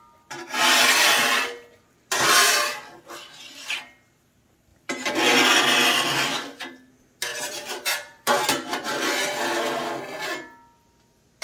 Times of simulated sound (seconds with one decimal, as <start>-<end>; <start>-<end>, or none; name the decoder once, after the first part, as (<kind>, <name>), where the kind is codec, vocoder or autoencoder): 7.3-8.3 (vocoder, BigVGAN v2)